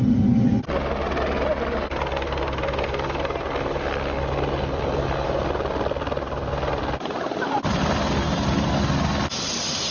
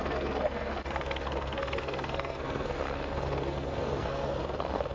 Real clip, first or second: first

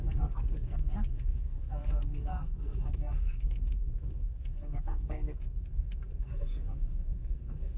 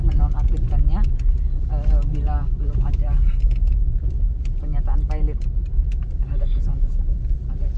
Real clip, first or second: second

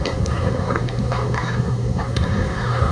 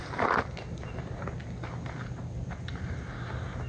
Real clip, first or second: second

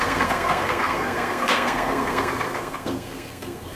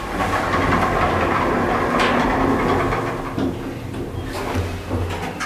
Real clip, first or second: second